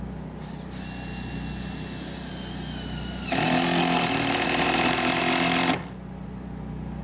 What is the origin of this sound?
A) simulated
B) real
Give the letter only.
B